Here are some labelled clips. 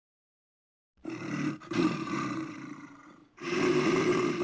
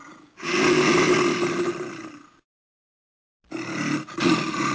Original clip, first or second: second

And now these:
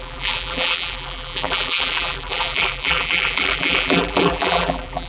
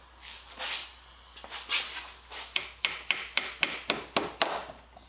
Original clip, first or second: second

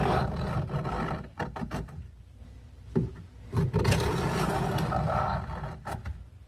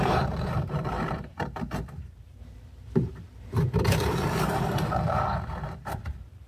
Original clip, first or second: first